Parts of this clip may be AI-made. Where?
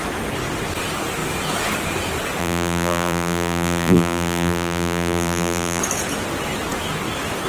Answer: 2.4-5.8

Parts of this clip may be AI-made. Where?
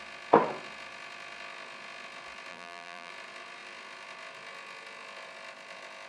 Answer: 2.5-3.1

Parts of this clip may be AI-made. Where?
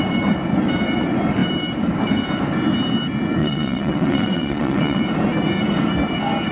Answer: 3.4-5.0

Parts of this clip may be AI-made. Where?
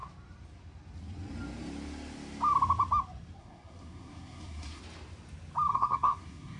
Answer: 3.4-4.8; 5.7-6.6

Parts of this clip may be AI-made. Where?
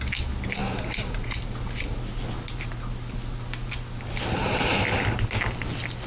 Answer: none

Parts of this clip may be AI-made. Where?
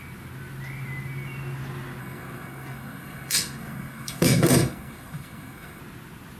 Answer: 2.0-5.8